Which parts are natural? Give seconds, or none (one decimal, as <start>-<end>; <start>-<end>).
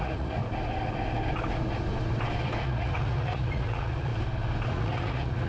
0.4-2.6; 4.1-4.7